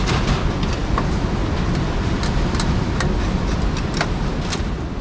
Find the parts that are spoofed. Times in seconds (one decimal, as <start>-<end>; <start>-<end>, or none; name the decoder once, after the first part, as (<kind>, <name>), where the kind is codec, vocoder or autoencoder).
none